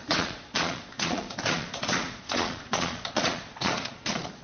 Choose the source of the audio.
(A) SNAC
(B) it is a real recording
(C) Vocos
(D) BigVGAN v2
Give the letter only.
C